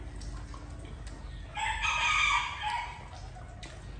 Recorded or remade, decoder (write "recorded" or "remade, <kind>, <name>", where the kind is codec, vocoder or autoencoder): recorded